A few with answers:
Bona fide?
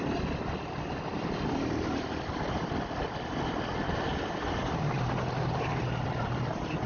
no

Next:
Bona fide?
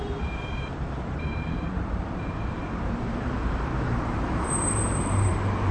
no